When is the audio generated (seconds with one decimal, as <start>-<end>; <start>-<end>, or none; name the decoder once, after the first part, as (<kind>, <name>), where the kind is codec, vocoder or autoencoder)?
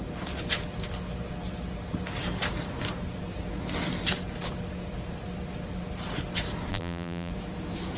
6.7-7.3 (vocoder, BigVGAN v2)